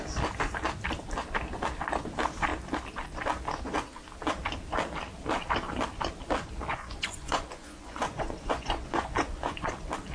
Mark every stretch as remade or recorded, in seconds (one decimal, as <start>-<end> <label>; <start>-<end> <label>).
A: 0.0-6.7 recorded; 6.7-9.7 remade; 9.7-10.1 recorded